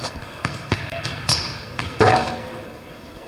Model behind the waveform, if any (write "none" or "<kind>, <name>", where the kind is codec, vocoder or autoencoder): codec, SNAC